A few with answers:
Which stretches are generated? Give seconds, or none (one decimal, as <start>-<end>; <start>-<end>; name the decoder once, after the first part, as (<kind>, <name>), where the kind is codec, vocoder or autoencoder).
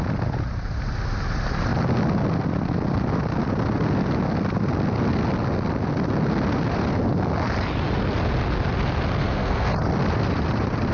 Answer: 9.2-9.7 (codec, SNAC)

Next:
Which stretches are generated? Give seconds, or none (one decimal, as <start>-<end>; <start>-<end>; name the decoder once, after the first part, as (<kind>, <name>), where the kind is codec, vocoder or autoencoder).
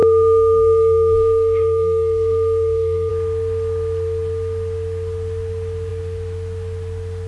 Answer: 0.0-3.1 (codec, SNAC)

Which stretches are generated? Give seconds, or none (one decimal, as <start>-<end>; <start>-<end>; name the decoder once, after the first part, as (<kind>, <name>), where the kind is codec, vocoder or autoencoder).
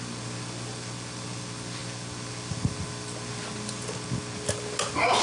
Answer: none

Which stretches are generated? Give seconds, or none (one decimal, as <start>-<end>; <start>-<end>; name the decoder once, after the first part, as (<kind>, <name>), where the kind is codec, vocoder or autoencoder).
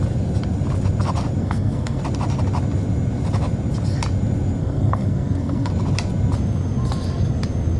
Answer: 1.4-2.0 (codec, SNAC); 4.6-5.7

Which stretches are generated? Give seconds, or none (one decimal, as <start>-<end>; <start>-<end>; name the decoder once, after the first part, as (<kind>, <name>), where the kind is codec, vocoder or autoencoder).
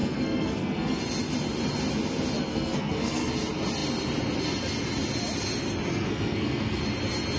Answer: 0.0-1.0 (codec, SNAC); 2.5-3.3; 5.9-6.8